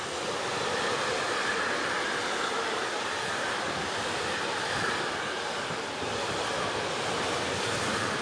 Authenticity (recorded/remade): recorded